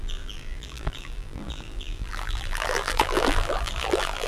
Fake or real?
fake